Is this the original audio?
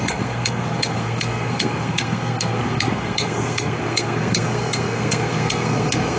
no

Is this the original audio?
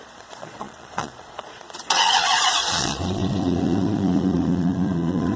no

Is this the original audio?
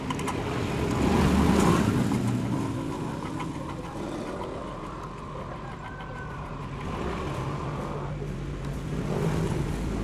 yes